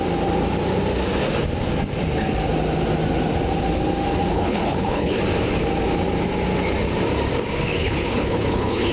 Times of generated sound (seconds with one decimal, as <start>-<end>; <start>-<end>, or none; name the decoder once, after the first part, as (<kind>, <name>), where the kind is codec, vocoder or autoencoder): 4.3-5.2 (codec, HILCodec); 7.8-8.9